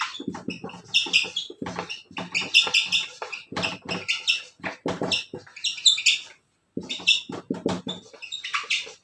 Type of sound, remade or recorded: recorded